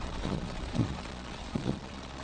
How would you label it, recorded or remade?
remade